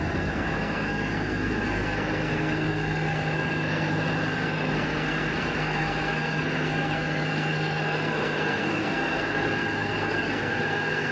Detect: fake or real fake